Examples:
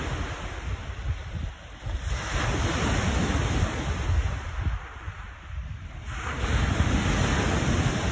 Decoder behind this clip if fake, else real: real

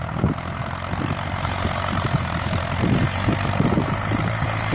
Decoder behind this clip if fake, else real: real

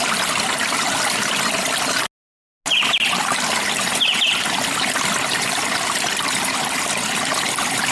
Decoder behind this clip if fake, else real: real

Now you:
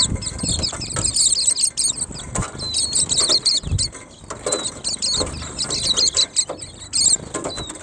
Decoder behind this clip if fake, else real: real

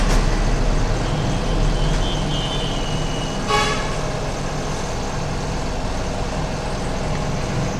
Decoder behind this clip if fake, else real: real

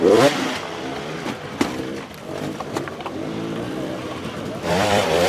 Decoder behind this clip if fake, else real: fake, vocoder, BigVGAN v2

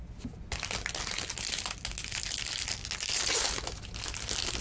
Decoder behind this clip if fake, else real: real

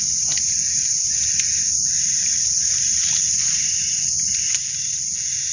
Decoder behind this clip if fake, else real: fake, vocoder, BigVGAN v2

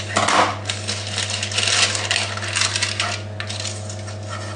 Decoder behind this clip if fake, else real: real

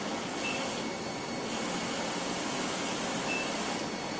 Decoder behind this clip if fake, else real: real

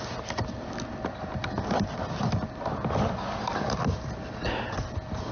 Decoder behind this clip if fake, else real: real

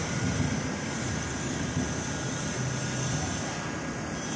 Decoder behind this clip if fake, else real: real